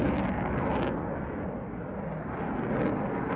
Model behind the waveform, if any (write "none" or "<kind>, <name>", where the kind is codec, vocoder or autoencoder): none